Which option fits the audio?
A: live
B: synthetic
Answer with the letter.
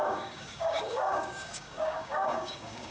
B